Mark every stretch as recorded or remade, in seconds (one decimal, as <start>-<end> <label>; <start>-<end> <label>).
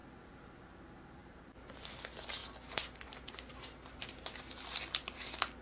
0.0-1.2 recorded; 1.2-1.9 remade; 1.9-5.6 recorded